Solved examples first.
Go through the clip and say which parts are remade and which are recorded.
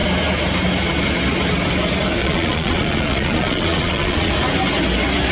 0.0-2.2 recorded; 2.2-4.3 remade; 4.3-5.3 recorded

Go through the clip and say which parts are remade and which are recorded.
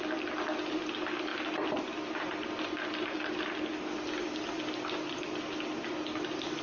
0.0-6.6 recorded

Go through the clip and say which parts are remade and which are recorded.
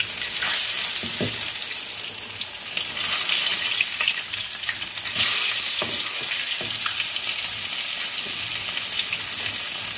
0.0-10.0 recorded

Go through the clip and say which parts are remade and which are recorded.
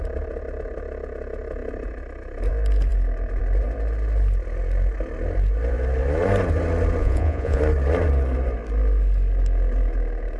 0.0-7.0 recorded; 7.0-7.6 remade; 7.6-10.4 recorded